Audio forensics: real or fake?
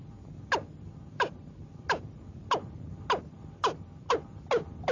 real